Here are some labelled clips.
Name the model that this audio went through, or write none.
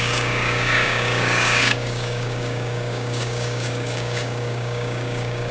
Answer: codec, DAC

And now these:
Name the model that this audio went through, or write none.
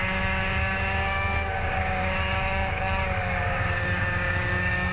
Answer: codec, DAC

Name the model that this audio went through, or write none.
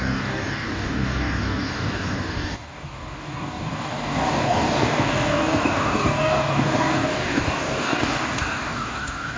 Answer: codec, DAC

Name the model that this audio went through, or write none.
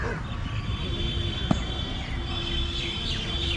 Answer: none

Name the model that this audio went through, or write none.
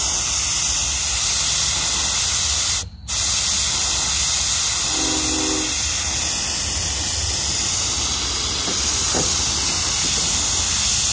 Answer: none